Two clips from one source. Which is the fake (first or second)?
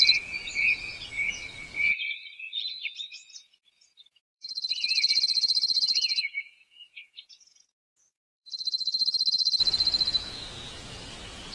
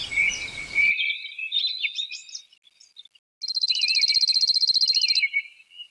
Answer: first